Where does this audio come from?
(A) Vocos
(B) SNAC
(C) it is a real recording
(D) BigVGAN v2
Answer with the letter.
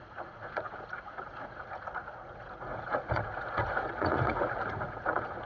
A